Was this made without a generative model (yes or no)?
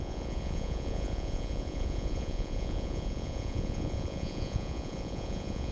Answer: no